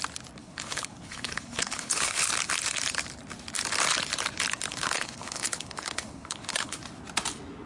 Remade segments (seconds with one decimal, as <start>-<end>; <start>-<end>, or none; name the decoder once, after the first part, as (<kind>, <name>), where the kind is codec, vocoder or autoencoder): 0.4-2.3 (codec, HILCodec); 4.7-6.8